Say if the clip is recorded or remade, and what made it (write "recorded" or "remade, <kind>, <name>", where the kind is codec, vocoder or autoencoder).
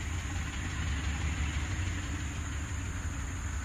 recorded